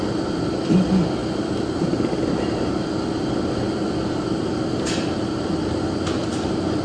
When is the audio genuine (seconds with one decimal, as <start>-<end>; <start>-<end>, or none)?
0.0-1.2; 2.8-6.2